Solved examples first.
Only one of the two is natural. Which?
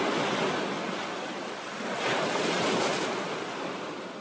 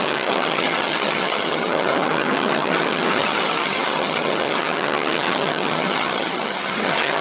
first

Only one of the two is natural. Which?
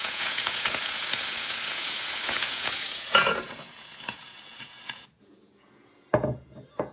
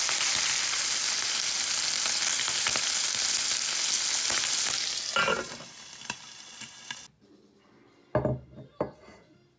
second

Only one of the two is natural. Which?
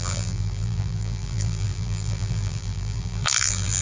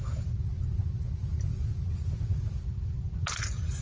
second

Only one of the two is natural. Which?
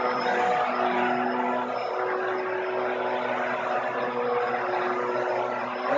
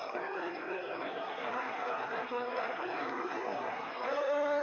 first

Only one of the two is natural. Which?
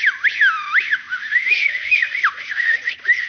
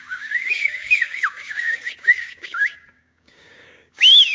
first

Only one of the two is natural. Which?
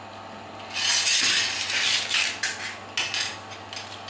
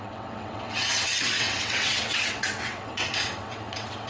first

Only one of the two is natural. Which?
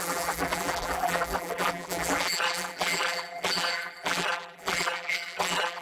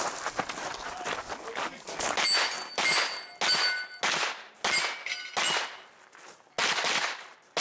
second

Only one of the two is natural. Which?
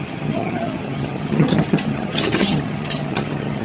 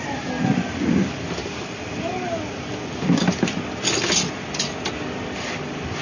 second